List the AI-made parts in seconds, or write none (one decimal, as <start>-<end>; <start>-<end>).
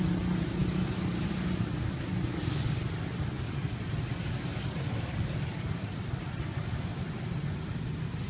none